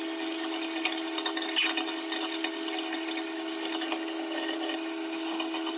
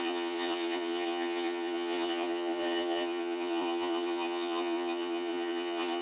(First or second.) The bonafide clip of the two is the first